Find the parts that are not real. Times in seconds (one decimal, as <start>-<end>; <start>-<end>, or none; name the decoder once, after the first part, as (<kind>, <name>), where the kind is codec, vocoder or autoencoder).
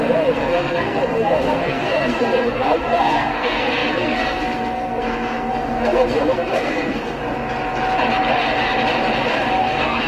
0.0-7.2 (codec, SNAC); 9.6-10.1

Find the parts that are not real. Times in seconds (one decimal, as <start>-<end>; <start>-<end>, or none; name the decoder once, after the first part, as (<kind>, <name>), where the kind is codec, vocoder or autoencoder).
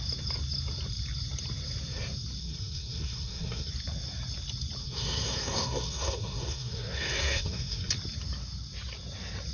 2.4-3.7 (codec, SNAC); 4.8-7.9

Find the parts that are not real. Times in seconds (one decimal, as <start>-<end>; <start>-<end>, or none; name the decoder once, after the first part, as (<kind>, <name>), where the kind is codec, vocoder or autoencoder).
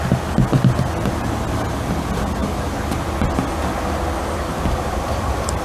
none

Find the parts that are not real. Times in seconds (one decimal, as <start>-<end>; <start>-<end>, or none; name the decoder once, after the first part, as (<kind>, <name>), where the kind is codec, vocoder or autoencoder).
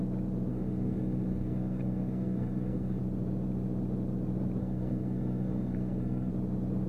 0.5-3.0 (codec, SNAC); 4.6-6.3